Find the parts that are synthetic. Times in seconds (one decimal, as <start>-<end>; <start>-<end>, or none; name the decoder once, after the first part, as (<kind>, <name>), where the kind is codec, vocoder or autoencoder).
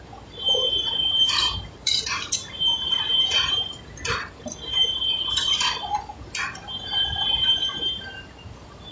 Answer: 1.8-2.6 (vocoder, BigVGAN v2)